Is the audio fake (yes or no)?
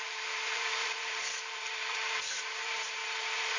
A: yes